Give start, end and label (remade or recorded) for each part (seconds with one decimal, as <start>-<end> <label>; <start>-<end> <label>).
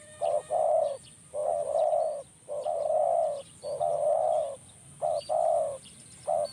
0.0-6.5 recorded